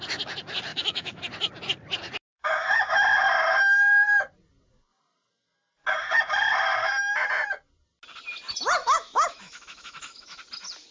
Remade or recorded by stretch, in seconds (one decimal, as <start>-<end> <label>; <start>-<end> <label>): 0.0-0.7 recorded; 0.7-1.2 remade; 1.2-2.3 recorded; 2.3-3.0 remade; 3.0-8.8 recorded; 8.8-10.4 remade; 10.4-10.9 recorded